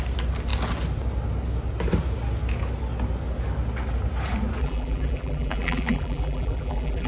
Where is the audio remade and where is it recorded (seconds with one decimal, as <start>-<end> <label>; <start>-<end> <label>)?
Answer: 0.0-4.6 recorded; 4.6-7.1 remade